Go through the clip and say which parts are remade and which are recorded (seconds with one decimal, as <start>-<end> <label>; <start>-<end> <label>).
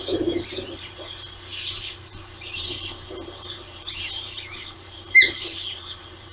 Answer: 0.0-6.3 remade